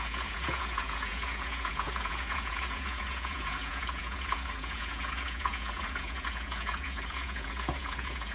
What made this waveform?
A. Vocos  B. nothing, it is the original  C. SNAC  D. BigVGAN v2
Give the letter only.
A